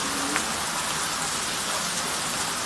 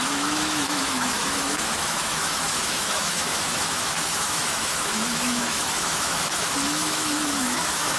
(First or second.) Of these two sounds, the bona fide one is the first